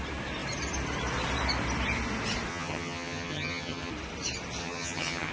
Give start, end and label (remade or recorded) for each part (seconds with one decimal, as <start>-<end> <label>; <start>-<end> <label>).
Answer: 0.0-2.5 recorded; 2.5-3.9 remade; 3.9-4.6 recorded; 4.6-5.3 remade